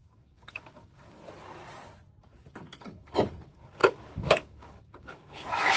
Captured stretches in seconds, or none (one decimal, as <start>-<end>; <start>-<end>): 1.2-2.2